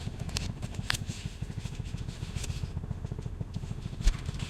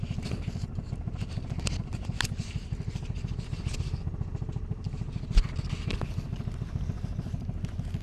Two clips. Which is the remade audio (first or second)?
first